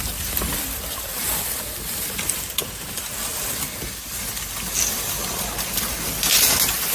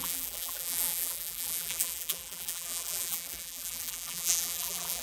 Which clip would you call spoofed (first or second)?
second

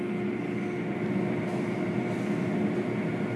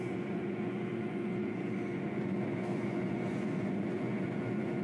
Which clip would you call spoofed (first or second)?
second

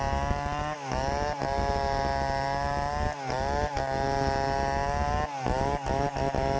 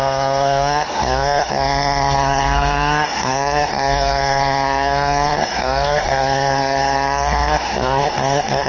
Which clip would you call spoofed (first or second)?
second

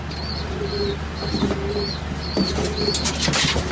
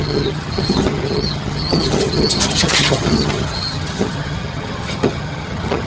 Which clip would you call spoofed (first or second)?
second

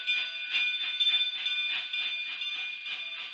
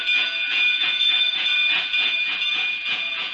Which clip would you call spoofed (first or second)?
second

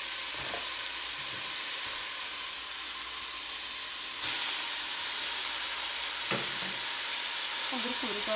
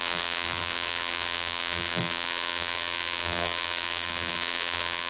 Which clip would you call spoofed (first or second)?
second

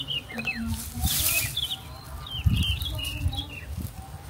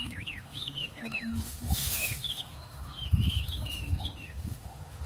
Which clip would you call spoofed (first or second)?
second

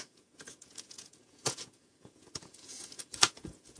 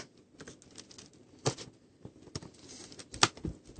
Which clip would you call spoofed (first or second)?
first